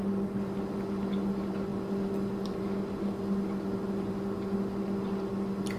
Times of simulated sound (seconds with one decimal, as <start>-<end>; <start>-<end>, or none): none